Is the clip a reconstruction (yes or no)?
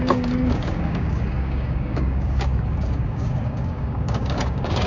yes